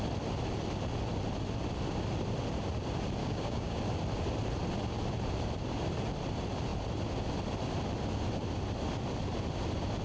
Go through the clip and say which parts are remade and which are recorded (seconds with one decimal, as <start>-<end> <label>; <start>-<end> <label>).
0.0-3.2 recorded; 3.2-3.8 remade; 3.8-10.0 recorded